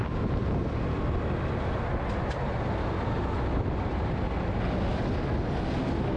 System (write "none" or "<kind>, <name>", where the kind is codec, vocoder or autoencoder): none